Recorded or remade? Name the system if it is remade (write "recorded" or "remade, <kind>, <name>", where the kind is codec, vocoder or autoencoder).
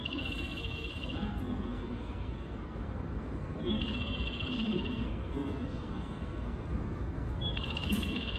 remade, codec, SNAC